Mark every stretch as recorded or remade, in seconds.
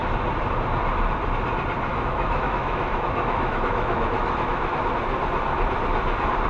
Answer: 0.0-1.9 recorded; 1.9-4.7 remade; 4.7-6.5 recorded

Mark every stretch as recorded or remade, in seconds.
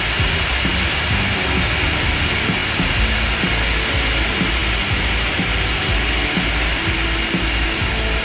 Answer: 0.0-8.2 recorded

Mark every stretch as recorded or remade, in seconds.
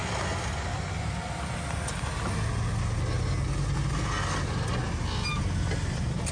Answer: 0.0-6.3 recorded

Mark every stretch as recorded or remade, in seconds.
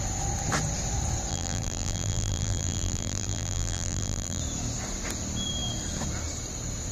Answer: 0.0-1.3 recorded; 1.3-4.4 remade; 4.4-6.9 recorded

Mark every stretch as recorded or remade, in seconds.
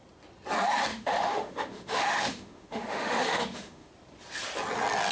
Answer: 0.0-0.9 recorded; 0.9-3.9 remade; 3.9-5.1 recorded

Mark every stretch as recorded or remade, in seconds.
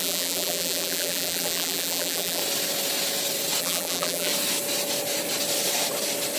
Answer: 0.0-2.4 remade; 2.4-3.6 recorded; 3.6-4.3 remade; 4.3-6.4 recorded